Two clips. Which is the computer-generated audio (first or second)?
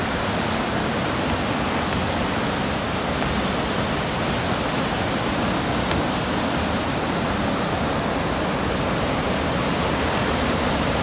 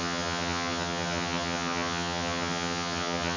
second